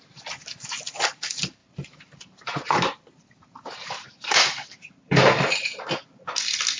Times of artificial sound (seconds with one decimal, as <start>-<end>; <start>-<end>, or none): 1.6-4.9